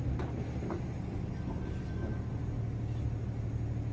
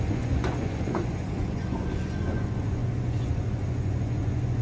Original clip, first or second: first